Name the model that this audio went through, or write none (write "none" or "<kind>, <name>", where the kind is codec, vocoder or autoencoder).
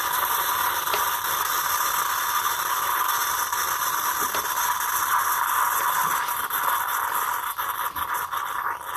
none